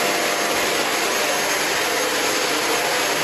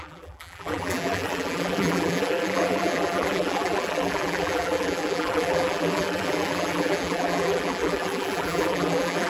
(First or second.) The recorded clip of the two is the first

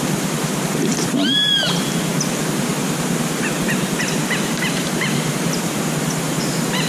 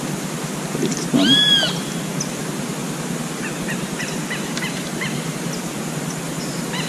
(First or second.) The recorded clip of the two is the second